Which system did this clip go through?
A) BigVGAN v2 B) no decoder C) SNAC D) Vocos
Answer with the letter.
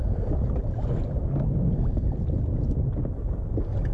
B